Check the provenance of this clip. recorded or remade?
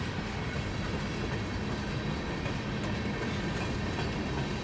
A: recorded